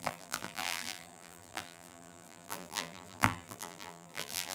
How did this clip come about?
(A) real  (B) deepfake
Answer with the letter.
B